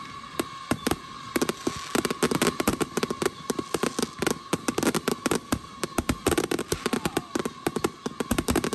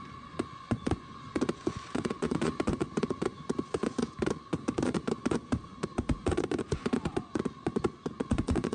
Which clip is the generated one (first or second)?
second